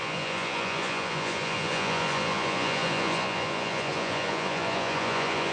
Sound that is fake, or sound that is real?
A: fake